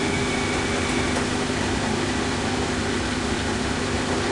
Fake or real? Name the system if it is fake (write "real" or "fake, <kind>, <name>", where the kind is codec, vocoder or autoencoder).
real